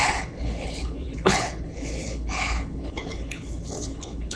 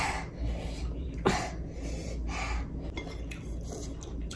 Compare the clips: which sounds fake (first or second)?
first